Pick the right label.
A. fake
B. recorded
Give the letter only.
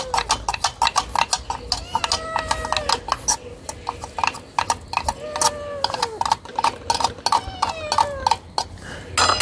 B